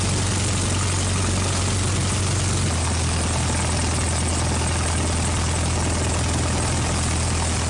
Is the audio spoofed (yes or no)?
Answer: no